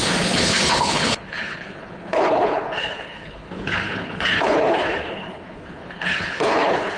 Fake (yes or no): yes